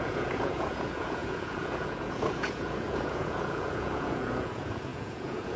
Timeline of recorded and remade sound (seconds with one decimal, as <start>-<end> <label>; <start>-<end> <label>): 0.0-5.6 remade